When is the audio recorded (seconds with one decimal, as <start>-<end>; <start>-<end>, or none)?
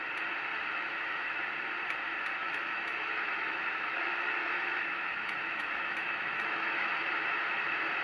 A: 0.0-0.5; 1.4-2.4; 7.1-8.0